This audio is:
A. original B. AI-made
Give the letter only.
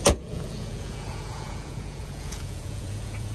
B